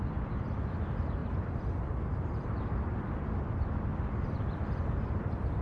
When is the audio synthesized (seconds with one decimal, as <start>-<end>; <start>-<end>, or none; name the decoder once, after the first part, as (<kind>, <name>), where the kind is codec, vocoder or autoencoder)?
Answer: 1.2-4.6 (vocoder, BigVGAN v2)